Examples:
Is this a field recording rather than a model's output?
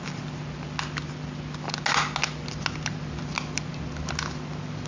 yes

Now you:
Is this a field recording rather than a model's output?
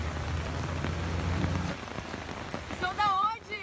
no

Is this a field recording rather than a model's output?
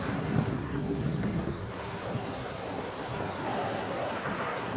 no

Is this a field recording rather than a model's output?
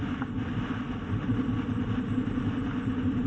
no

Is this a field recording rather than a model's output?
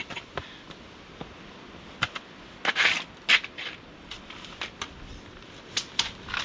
yes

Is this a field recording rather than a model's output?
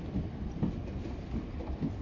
yes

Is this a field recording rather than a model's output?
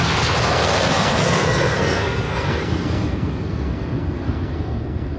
no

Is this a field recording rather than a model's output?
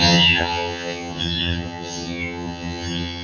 no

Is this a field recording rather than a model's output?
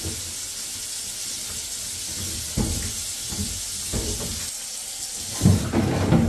yes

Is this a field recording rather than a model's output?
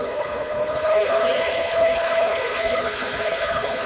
no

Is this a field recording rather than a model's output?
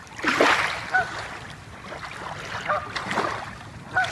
yes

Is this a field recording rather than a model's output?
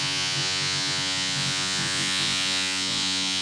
no